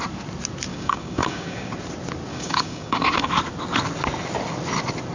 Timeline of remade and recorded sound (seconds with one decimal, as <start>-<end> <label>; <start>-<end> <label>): 0.0-0.7 recorded; 0.7-1.7 remade; 1.7-2.3 recorded; 2.3-3.3 remade; 3.3-5.1 recorded